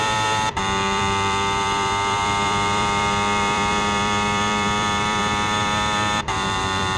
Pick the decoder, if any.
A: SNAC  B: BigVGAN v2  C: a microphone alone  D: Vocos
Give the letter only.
B